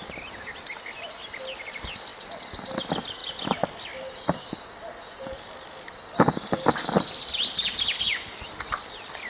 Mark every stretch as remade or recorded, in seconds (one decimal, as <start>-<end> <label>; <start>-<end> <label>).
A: 0.0-3.2 recorded; 3.2-8.0 remade; 8.0-9.3 recorded